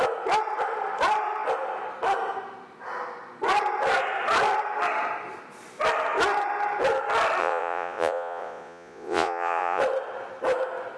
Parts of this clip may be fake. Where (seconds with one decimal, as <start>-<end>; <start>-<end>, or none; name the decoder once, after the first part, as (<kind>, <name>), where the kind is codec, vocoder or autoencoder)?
7.4-9.8 (vocoder, Vocos)